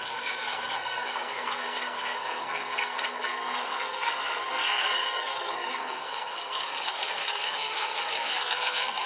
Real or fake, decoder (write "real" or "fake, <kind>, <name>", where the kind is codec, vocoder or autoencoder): fake, codec, SNAC